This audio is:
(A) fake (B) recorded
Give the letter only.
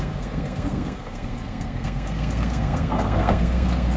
A